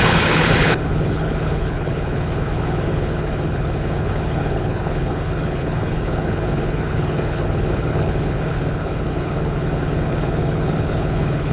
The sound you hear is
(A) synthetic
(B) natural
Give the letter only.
A